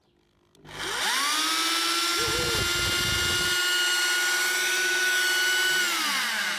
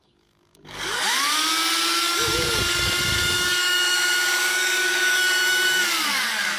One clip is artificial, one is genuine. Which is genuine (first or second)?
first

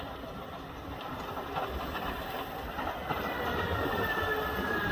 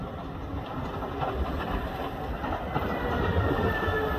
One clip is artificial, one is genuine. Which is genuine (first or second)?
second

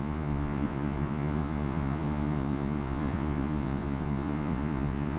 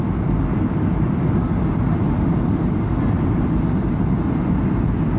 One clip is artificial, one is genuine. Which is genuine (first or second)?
second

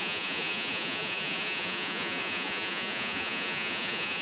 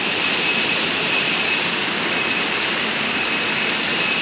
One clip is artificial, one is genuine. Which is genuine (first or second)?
second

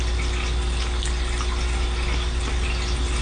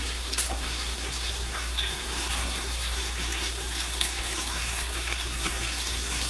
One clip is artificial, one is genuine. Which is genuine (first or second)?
first